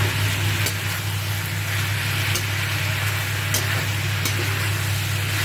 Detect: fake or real real